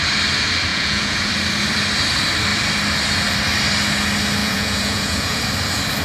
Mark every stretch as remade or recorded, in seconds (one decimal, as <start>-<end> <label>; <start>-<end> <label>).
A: 0.0-0.7 recorded; 0.7-1.3 remade; 1.3-4.4 recorded; 4.4-5.4 remade; 5.4-6.0 recorded